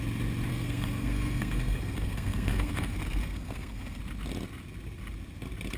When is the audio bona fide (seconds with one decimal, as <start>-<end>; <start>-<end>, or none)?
0.0-0.5; 4.0-5.8